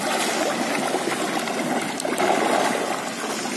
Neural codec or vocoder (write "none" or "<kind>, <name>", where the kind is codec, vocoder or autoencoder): none